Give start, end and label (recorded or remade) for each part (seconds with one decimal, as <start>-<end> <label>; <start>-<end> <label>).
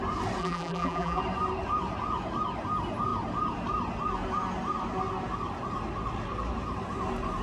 0.0-0.4 recorded; 0.4-1.2 remade; 1.2-7.4 recorded